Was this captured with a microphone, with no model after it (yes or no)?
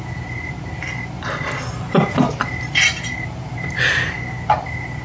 yes